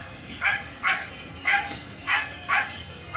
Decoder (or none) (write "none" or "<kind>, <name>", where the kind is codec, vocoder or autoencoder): codec, SNAC